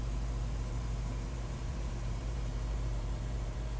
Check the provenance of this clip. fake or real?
fake